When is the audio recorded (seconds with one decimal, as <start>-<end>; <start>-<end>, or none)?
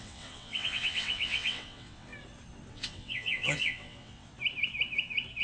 2.1-2.7; 4.3-5.4